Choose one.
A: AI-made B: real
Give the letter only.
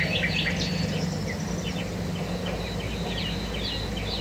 B